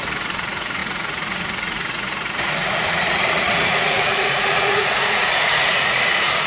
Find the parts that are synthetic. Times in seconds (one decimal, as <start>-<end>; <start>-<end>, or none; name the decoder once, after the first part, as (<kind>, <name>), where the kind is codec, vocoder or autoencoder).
0.0-6.5 (vocoder, Vocos)